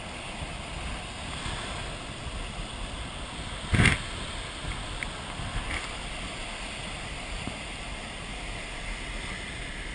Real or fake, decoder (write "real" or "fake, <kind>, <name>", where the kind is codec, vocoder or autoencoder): real